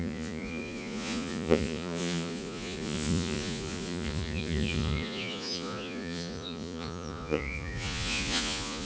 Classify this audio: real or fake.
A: fake